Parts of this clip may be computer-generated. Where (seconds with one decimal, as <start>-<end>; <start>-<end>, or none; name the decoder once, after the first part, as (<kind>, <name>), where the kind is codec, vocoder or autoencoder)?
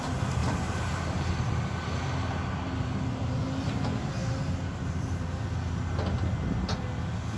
0.4-1.3 (vocoder, BigVGAN v2)